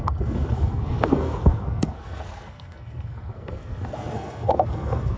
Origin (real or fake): fake